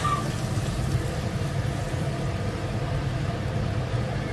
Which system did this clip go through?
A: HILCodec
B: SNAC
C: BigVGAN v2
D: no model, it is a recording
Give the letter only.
C